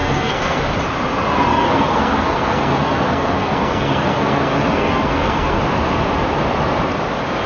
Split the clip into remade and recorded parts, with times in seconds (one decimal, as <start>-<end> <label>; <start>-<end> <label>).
0.0-0.6 remade; 0.6-1.5 recorded; 1.5-5.6 remade; 5.6-7.5 recorded